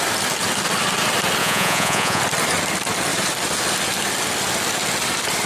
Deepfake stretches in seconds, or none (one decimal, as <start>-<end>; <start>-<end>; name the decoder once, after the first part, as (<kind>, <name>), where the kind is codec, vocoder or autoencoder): 1.4-2.2 (vocoder, Vocos)